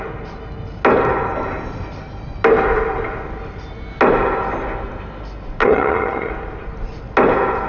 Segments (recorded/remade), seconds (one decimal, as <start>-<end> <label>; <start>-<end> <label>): 0.0-5.6 recorded; 5.6-6.3 remade; 6.3-7.7 recorded